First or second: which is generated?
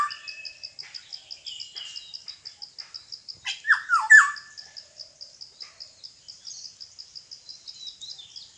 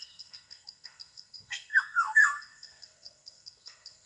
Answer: second